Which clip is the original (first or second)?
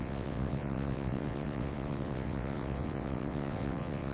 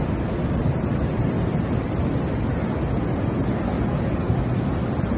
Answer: second